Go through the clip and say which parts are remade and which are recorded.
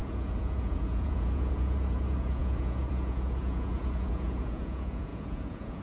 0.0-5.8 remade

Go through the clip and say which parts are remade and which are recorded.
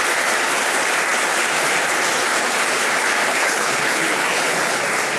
0.0-3.3 recorded; 3.3-4.8 remade; 4.8-5.2 recorded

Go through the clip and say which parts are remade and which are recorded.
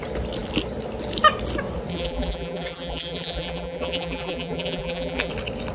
0.0-1.9 recorded; 1.9-5.3 remade; 5.3-5.7 recorded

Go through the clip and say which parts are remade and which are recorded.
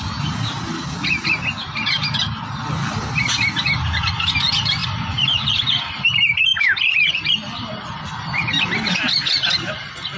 0.0-4.8 recorded; 4.8-6.0 remade; 6.0-6.5 recorded; 6.5-8.9 remade; 8.9-10.2 recorded